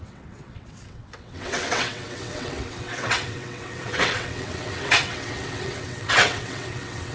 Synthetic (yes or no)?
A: yes